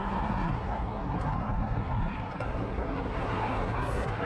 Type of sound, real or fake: fake